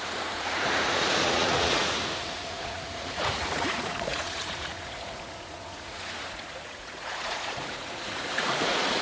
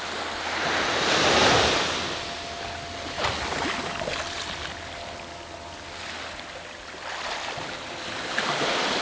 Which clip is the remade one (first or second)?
first